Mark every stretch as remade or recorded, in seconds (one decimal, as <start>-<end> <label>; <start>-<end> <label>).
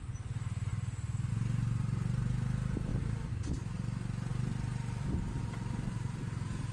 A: 0.0-2.9 recorded; 2.9-3.5 remade; 3.5-6.7 recorded